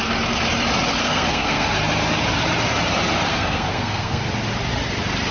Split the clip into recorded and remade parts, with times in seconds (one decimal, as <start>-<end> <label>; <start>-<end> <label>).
0.0-1.0 recorded; 1.0-1.7 remade; 1.7-3.3 recorded; 3.3-4.2 remade; 4.2-5.3 recorded